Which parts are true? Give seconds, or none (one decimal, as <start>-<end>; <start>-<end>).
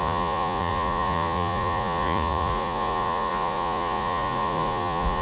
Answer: none